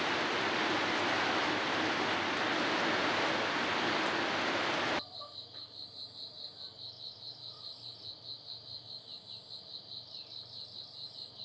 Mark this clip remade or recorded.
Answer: recorded